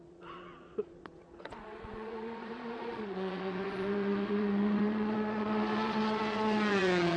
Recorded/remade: remade